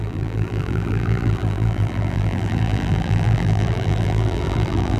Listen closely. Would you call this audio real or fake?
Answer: fake